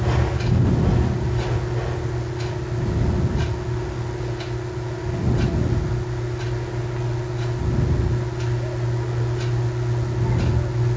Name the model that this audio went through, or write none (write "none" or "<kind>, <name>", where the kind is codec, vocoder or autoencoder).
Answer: none